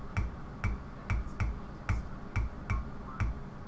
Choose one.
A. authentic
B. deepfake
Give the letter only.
A